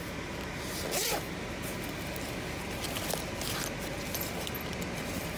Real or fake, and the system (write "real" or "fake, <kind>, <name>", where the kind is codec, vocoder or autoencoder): real